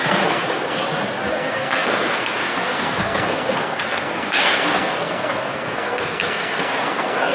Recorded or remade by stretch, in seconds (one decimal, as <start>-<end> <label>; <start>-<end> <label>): 0.0-0.8 remade; 0.8-1.3 recorded; 1.3-7.3 remade